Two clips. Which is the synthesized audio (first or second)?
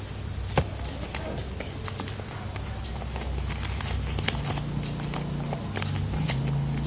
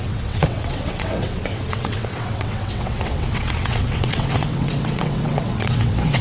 second